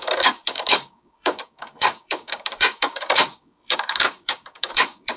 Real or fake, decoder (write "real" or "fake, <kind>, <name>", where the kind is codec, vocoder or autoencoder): fake, codec, DAC